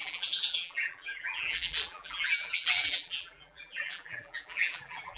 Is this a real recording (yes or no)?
no